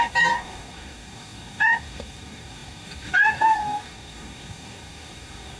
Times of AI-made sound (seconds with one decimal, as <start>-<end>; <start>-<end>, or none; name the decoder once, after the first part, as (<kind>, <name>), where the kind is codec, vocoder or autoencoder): 0.0-5.6 (codec, DAC)